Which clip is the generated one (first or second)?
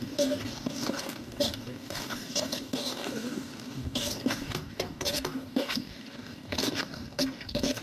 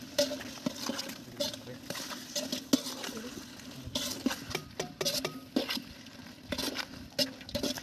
first